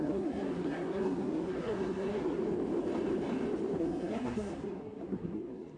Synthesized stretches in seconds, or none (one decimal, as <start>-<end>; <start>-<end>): 0.0-2.4; 3.8-5.8